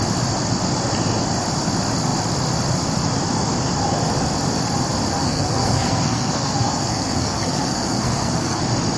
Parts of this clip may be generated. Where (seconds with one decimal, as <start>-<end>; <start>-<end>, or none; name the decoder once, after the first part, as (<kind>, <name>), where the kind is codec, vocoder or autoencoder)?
5.2-8.6 (codec, SNAC)